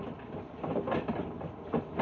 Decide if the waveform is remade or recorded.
recorded